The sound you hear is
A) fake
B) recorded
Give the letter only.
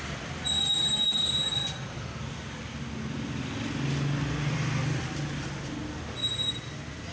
B